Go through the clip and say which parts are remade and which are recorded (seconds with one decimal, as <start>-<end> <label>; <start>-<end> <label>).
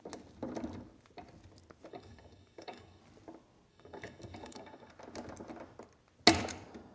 0.0-1.9 recorded; 1.9-3.0 remade; 3.0-3.7 recorded; 3.7-4.9 remade; 4.9-6.9 recorded